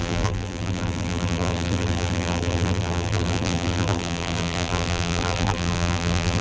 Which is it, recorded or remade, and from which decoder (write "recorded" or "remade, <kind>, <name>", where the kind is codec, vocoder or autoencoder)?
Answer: remade, vocoder, BigVGAN v2